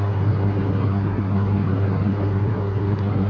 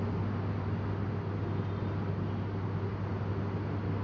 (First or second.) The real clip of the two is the second